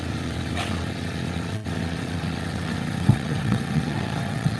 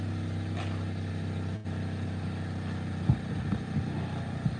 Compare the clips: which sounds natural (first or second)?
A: second